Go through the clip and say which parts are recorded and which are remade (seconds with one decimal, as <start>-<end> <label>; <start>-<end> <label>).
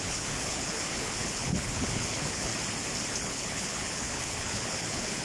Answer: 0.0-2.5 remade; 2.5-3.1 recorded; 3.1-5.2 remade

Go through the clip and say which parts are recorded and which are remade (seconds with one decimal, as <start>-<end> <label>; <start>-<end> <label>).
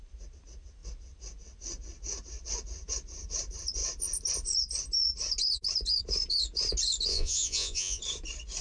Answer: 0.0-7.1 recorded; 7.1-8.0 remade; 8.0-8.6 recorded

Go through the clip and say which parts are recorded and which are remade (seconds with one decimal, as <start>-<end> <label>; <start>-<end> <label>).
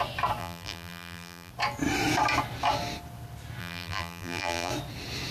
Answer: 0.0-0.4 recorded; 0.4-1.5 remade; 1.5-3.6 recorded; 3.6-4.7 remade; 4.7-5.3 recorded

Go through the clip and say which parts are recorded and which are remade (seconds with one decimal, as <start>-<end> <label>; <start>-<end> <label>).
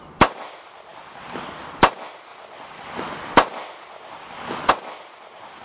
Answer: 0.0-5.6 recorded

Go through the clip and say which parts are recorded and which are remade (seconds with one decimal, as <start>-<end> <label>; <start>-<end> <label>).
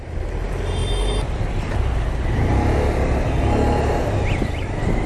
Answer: 0.0-5.1 recorded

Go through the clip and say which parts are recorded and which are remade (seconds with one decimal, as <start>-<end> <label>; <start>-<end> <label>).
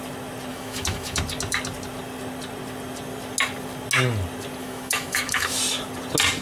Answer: 0.0-0.5 recorded; 0.5-1.2 remade; 1.2-4.6 recorded; 4.6-5.6 remade; 5.6-6.4 recorded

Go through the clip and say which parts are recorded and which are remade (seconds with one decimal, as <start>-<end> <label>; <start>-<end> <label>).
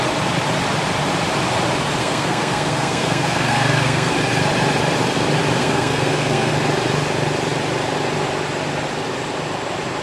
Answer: 0.0-2.0 recorded; 2.0-4.1 remade; 4.1-5.6 recorded; 5.6-6.5 remade; 6.5-10.0 recorded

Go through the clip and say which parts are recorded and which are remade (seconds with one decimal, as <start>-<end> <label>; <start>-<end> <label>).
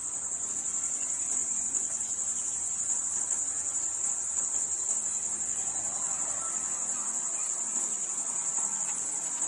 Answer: 0.0-0.5 remade; 0.5-1.4 recorded; 1.4-3.0 remade; 3.0-9.5 recorded